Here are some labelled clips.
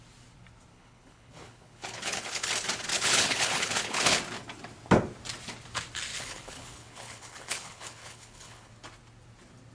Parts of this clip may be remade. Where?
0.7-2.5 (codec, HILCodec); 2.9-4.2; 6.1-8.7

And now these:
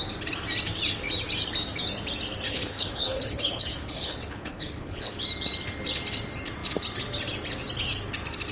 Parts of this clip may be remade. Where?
2.5-5.1 (codec, HILCodec)

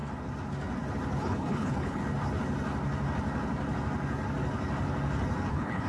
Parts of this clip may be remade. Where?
1.2-2.0 (codec, HILCodec); 5.5-5.9

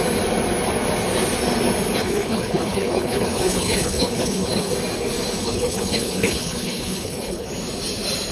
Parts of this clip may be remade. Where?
2.0-4.7 (codec, HILCodec); 5.4-7.5